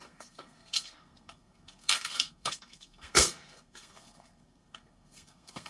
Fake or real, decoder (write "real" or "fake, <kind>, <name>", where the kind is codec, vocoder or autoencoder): fake, codec, SNAC